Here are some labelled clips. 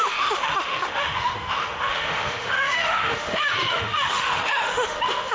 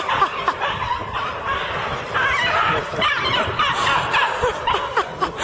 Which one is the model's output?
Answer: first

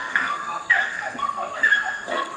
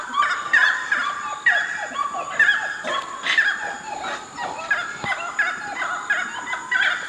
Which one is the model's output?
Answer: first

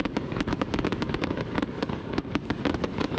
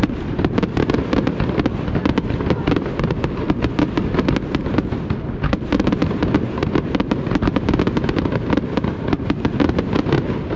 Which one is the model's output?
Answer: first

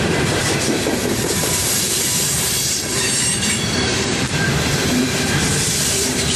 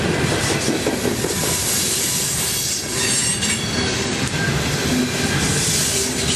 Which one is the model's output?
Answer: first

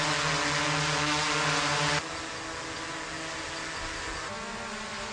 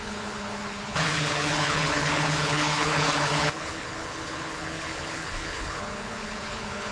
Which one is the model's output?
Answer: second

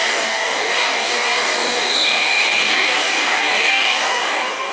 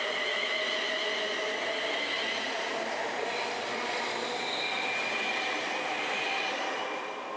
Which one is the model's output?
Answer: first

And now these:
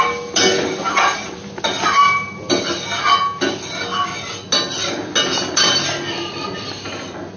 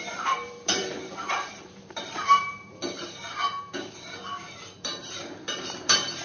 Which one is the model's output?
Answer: second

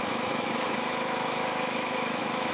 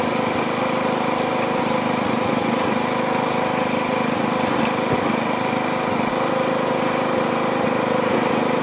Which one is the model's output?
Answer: first